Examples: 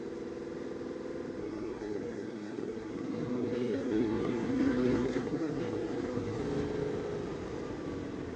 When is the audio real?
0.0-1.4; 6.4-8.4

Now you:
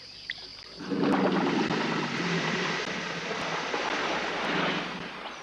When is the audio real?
0.0-5.4

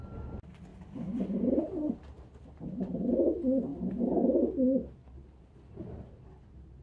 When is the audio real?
0.0-0.7; 1.9-6.8

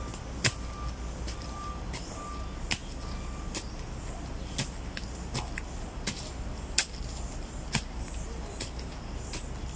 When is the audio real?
0.0-9.8

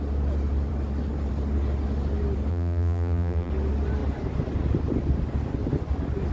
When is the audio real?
0.0-2.5; 3.5-6.3

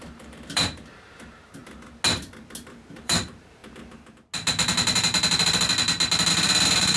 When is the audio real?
1.6-2.7; 3.6-6.3

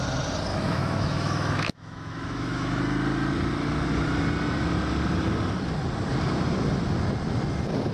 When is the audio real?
0.0-0.5; 2.8-7.9